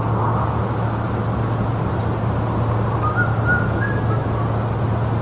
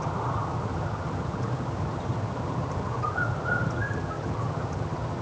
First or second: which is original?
first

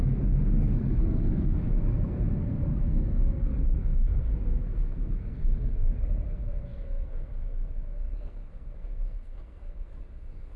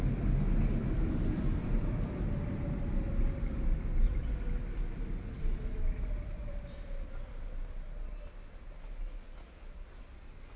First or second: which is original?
second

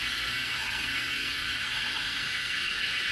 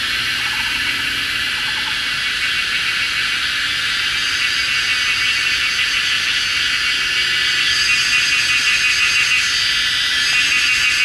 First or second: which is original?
second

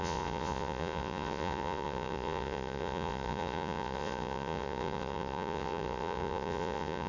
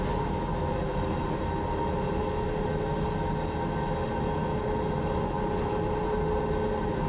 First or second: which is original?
second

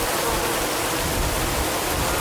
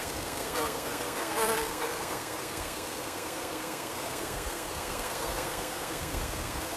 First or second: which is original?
first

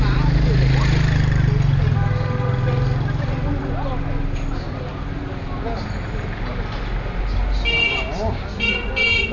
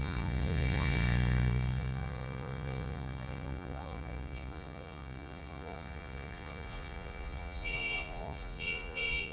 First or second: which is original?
first